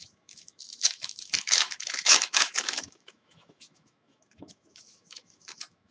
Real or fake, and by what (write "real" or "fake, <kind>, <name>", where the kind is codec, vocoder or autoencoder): fake, autoencoder, DAC-VAE